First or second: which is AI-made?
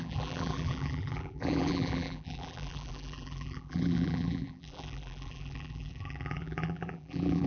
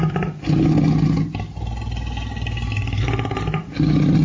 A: first